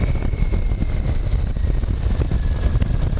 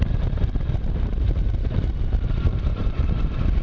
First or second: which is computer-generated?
second